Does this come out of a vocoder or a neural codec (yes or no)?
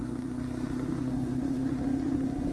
yes